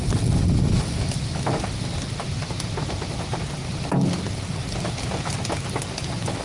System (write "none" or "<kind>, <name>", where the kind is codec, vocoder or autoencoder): none